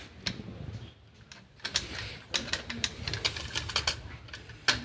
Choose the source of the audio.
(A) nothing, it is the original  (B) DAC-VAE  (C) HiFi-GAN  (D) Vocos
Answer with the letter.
A